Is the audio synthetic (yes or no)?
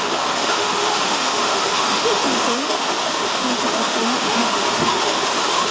yes